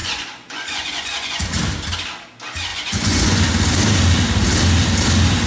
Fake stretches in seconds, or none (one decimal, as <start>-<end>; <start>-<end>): 0.0-1.5; 2.7-3.4